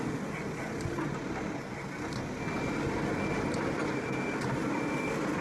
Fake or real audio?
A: real